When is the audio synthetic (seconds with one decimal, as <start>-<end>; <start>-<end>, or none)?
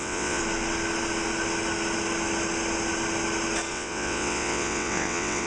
0.0-0.4; 3.7-5.5